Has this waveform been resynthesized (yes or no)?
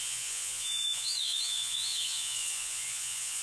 yes